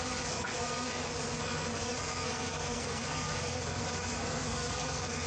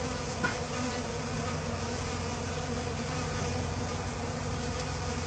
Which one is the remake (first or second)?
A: first